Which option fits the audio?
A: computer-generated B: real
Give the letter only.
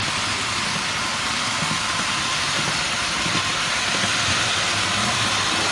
B